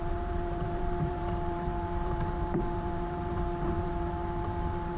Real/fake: fake